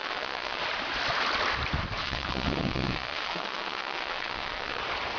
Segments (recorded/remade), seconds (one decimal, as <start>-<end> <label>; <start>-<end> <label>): 0.0-0.6 remade; 0.6-2.0 recorded; 2.0-4.8 remade; 4.8-5.2 recorded